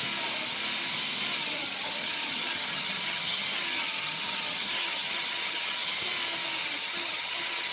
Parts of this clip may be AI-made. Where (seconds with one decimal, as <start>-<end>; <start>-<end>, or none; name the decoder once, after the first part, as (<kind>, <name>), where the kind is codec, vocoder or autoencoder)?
1.4-6.0 (vocoder, HiFi-GAN); 6.6-7.7

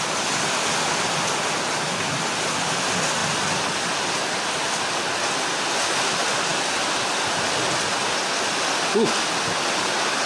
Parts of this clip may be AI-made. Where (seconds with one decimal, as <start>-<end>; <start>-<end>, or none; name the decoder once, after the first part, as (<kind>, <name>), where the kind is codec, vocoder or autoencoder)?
none

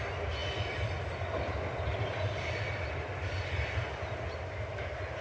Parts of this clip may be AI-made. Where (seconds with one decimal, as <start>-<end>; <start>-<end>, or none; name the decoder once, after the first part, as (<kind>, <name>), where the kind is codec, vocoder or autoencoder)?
none

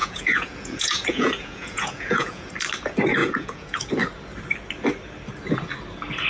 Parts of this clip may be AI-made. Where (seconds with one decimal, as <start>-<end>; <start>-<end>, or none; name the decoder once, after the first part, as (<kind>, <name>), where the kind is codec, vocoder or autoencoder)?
0.0-2.5 (vocoder, Vocos); 3.2-3.9

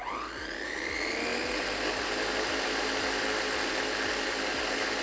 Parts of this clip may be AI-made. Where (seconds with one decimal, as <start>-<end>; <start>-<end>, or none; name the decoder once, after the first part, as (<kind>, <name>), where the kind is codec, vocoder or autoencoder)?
none